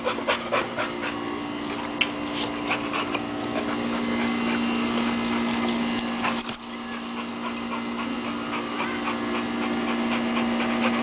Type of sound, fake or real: real